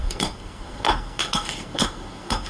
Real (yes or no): no